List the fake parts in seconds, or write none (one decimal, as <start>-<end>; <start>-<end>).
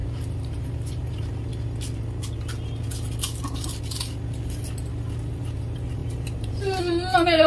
0.0-1.5; 5.4-7.5